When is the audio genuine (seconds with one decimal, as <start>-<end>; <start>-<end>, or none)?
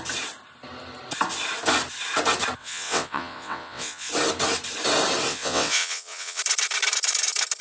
0.0-2.6; 4.1-5.3; 6.4-7.6